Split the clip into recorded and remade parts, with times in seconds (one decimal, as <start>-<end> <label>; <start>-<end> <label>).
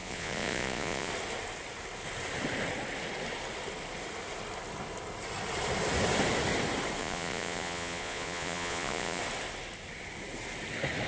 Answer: 0.0-1.1 remade; 1.1-7.0 recorded; 7.0-9.2 remade; 9.2-11.1 recorded